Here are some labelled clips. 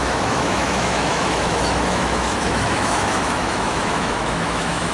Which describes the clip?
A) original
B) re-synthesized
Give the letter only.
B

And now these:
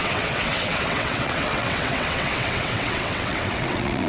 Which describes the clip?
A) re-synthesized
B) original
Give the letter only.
A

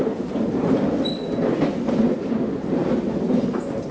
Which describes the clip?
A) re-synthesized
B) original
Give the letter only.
B